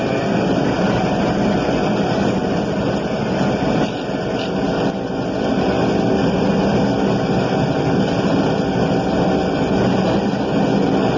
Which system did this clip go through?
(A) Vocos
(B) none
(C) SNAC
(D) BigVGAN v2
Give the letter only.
B